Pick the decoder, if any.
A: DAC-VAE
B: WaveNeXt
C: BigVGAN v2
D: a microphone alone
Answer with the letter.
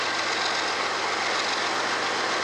D